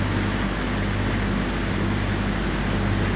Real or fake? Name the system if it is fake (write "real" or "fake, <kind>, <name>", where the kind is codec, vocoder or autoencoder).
real